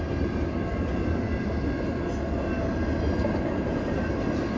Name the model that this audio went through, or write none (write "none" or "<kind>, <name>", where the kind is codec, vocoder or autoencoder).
none